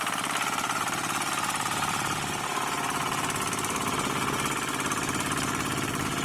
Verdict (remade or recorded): recorded